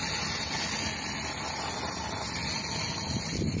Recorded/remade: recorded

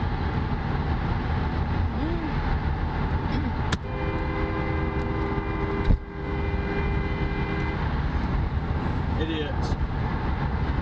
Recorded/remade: recorded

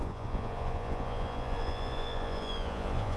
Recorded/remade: remade